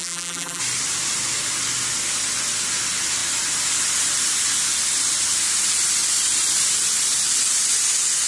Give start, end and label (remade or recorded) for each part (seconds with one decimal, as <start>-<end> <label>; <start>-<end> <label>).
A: 0.0-0.6 remade; 0.6-8.3 recorded